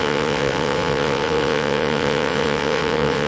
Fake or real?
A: fake